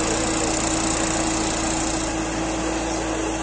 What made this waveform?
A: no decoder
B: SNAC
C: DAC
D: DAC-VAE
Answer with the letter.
A